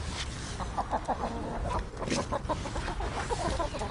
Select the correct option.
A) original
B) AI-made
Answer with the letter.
A